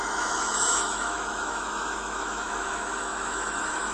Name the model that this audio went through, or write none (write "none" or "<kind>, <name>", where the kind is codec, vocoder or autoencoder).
autoencoder, DAC-VAE